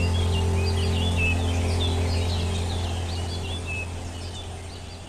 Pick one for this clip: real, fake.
real